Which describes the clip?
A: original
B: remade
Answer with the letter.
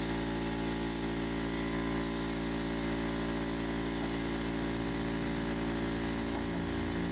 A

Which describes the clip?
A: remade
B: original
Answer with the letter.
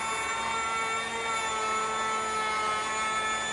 B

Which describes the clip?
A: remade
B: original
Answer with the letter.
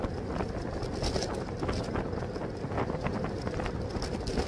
B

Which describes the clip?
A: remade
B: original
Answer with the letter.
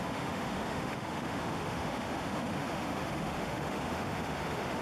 A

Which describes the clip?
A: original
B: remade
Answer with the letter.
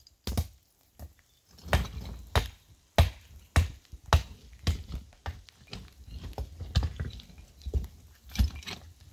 A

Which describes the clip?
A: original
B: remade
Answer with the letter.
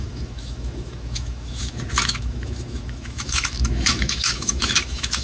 B